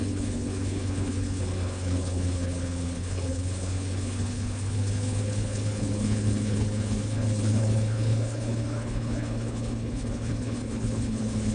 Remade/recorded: remade